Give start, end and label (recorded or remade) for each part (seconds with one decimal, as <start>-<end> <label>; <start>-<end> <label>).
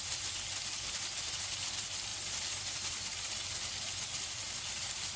0.0-5.2 recorded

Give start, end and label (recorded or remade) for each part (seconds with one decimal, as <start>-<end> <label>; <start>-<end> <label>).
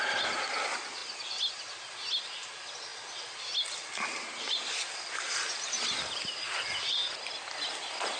0.0-8.2 recorded